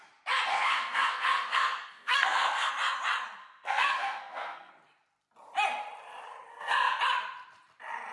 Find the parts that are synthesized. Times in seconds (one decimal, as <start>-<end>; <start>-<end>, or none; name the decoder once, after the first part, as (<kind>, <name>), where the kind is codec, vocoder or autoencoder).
0.5-2.7 (codec, SNAC); 3.4-4.7; 6.5-7.0